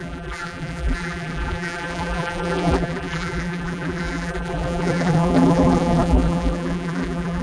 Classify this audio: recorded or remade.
remade